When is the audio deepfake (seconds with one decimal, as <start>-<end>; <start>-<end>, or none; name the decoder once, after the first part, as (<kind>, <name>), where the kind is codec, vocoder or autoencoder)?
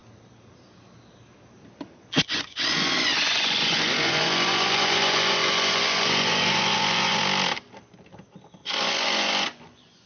2.2-7.2 (vocoder, Vocos); 8.6-10.1